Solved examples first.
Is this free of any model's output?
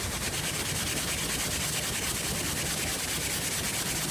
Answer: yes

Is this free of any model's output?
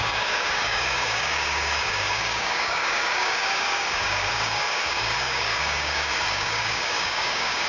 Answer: no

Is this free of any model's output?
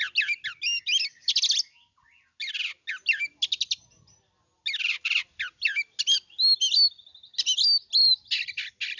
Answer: yes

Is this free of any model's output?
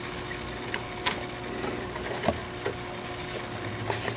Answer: yes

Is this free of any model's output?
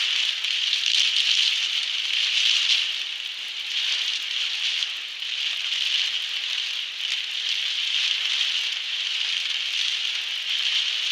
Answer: yes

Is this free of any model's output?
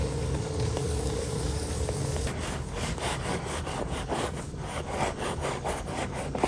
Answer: no